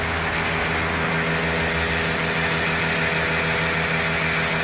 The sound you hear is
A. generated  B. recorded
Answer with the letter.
B